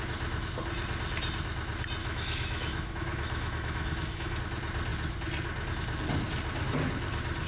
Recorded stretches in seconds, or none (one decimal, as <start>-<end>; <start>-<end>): 0.0-2.0; 4.4-7.5